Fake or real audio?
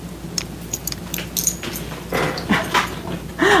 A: real